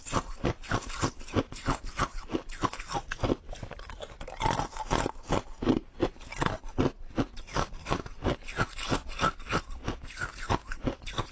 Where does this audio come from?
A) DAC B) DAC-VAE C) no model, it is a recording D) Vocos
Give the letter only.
C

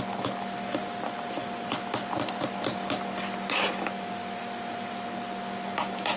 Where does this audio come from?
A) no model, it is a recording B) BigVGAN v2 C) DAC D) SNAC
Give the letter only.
A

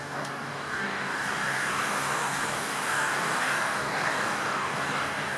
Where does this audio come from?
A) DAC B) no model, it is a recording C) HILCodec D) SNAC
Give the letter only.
A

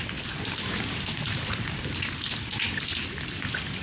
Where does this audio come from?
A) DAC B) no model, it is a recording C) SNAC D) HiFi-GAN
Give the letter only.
B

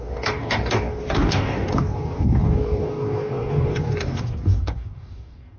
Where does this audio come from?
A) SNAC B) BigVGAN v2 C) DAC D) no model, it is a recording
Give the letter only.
C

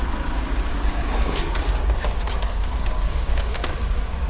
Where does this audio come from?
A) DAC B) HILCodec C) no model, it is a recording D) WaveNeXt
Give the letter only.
A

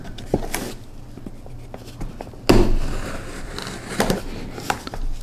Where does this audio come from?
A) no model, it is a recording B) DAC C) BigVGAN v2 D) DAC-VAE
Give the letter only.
A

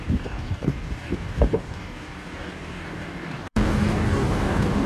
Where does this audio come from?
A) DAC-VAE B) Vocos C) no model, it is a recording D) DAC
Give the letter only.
D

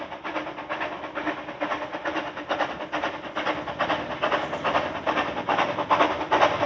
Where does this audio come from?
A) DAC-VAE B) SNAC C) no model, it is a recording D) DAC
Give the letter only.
C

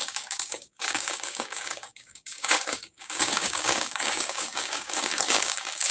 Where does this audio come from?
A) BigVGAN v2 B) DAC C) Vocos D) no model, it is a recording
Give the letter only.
B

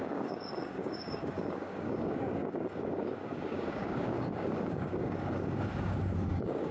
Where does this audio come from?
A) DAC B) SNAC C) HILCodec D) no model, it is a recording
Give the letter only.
A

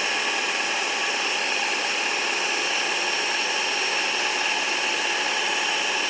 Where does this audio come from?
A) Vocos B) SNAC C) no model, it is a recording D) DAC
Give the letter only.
C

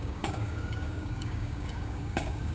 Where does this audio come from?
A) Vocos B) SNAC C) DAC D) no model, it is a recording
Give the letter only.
C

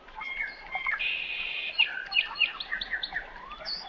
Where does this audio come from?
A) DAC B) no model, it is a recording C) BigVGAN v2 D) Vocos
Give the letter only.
B